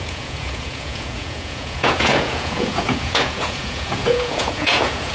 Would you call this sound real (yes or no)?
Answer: no